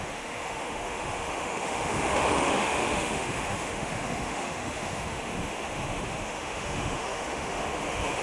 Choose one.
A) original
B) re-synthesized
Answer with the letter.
B